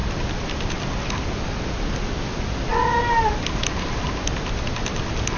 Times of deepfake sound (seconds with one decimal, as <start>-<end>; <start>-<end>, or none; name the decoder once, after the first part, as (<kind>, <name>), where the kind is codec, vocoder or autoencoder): none